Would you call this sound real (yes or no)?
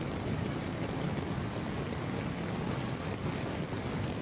yes